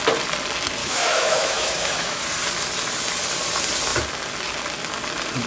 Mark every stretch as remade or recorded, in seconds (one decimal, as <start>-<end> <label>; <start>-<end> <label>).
0.0-0.8 recorded; 0.8-2.2 remade; 2.2-5.5 recorded